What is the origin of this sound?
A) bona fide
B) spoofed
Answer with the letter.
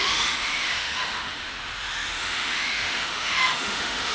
B